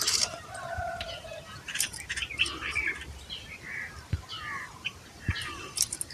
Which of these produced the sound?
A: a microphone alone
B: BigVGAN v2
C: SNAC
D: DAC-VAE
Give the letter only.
B